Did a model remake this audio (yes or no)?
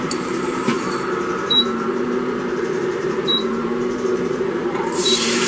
yes